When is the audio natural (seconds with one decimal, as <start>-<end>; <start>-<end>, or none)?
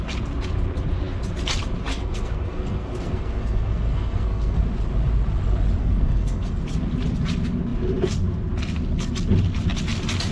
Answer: 0.0-1.9; 4.6-5.8; 6.6-10.3